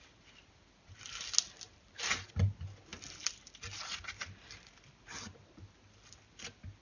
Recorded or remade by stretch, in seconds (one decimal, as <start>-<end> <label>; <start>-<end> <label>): 0.0-6.8 recorded